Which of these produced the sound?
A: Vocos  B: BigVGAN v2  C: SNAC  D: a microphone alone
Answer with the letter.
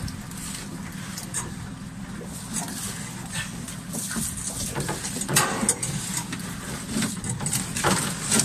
D